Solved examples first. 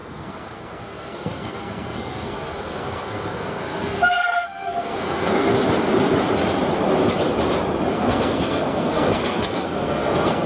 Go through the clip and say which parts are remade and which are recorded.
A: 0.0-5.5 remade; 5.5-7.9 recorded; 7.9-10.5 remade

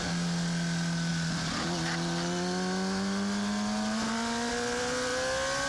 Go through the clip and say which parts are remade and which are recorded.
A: 0.0-5.7 recorded

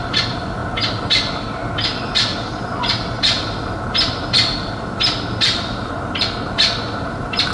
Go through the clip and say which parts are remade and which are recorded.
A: 0.0-7.5 recorded